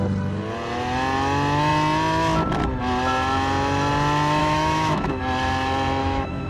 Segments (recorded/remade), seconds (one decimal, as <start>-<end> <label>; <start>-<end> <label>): 0.0-4.4 recorded; 4.4-5.2 remade; 5.2-6.0 recorded; 6.0-6.5 remade